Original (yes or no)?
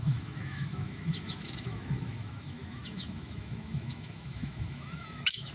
no